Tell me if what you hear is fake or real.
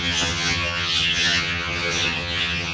fake